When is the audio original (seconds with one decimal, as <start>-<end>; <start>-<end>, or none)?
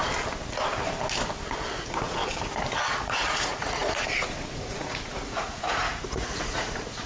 0.0-1.7; 2.2-2.9